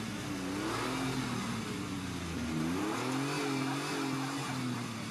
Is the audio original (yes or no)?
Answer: yes